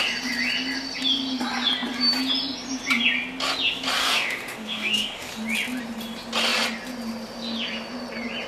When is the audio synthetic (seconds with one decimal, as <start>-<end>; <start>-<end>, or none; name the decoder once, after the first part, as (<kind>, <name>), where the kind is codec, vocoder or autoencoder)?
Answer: 4.0-5.3 (codec, DAC)